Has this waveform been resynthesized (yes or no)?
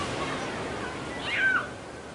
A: no